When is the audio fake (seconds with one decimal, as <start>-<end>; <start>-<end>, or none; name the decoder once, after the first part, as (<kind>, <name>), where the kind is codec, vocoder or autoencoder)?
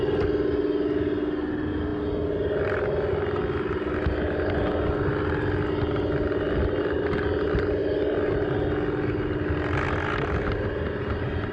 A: none